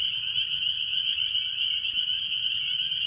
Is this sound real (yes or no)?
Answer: yes